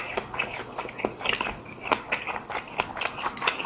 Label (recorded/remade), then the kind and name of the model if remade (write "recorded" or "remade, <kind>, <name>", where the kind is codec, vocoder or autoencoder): recorded